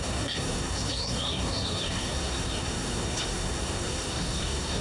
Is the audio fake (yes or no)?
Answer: yes